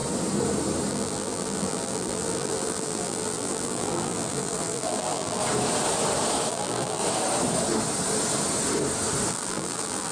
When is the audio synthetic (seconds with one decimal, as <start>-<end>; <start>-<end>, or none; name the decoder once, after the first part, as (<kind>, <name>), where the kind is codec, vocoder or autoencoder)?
0.9-5.4 (vocoder, BigVGAN v2); 6.5-7.0; 9.3-10.1